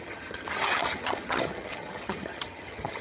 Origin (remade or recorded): remade